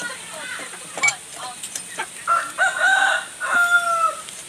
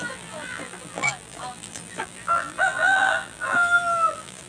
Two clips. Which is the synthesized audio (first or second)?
second